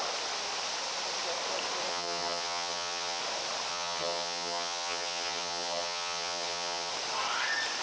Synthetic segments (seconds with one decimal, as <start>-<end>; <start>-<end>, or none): 1.9-3.2; 3.7-6.9